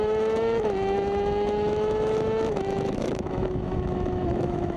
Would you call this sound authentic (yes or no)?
no